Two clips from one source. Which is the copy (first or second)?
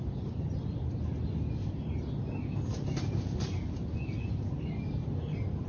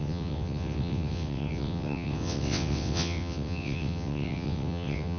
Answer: second